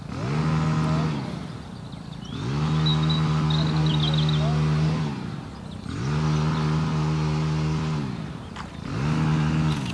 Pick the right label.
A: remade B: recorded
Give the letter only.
B